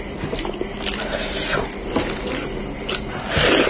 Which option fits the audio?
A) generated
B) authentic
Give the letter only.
B